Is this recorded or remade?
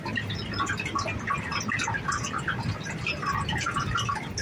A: recorded